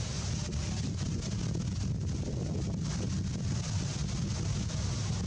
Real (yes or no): yes